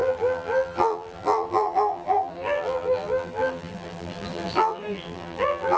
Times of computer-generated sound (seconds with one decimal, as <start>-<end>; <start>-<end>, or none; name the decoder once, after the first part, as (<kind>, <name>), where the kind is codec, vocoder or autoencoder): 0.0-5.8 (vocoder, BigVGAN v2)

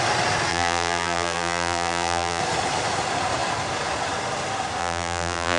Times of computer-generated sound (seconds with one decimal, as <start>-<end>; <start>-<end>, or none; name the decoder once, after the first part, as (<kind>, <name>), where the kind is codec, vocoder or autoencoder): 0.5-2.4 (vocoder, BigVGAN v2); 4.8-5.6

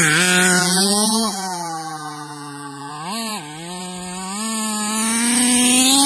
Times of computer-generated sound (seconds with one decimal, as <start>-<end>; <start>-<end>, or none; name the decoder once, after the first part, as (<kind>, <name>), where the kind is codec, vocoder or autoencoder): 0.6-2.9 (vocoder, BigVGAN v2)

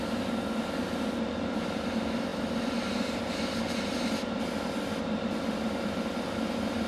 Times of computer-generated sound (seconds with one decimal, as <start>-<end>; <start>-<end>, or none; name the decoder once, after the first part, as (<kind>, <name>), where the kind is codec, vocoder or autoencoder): 2.3-4.4 (vocoder, BigVGAN v2)

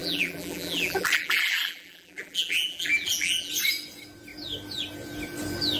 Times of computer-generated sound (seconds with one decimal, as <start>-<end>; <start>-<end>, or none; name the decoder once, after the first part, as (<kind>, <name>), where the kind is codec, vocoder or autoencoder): 0.0-3.5 (vocoder, BigVGAN v2)

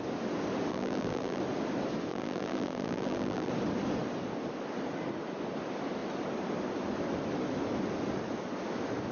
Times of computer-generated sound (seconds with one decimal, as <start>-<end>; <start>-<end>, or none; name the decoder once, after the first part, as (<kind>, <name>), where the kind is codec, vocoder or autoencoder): 0.7-1.4 (vocoder, BigVGAN v2); 2.1-3.5

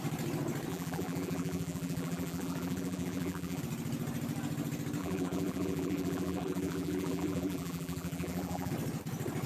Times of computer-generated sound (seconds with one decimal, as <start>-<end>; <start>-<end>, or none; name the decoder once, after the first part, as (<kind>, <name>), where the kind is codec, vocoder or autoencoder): 0.7-3.6 (vocoder, BigVGAN v2); 5.0-8.7